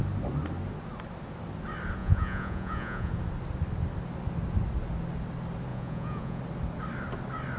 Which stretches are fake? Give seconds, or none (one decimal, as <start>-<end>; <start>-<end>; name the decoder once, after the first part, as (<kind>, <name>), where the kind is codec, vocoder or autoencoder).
2.0-3.1 (vocoder, Vocos); 5.7-6.4